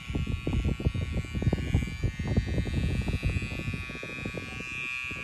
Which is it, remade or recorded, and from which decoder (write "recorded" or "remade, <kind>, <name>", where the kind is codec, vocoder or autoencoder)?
recorded